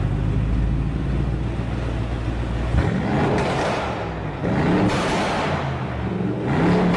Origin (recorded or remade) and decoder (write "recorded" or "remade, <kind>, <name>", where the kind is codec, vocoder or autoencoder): recorded